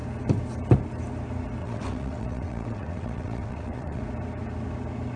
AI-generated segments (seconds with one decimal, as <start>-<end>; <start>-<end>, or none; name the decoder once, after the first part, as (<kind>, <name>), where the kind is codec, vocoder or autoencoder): 1.6-4.0 (vocoder, WaveNeXt)